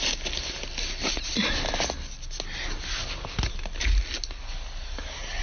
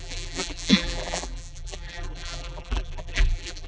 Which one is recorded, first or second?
first